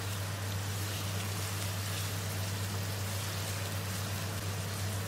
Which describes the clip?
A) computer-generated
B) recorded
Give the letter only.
B